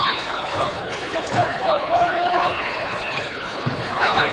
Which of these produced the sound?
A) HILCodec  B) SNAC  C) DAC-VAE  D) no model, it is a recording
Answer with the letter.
A